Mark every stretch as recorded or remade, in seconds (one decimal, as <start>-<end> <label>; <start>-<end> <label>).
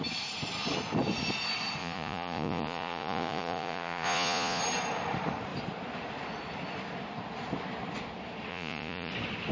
0.0-1.8 recorded; 1.8-4.6 remade; 4.6-8.5 recorded; 8.5-9.1 remade; 9.1-9.5 recorded